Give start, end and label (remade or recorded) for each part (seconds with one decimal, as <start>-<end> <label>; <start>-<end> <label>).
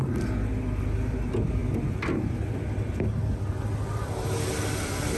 0.0-5.2 recorded